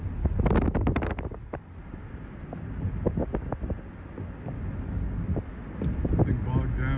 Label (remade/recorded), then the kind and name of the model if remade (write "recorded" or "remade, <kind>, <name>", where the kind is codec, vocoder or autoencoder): recorded